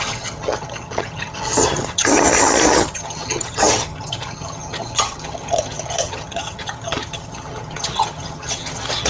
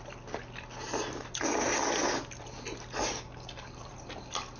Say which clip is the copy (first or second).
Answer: first